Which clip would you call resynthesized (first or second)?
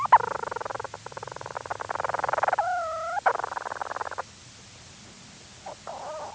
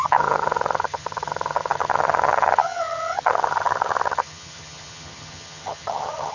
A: second